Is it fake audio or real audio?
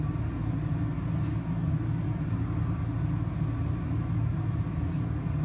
real